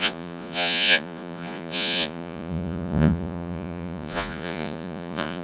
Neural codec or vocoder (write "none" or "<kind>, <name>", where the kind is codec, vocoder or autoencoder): vocoder, Vocos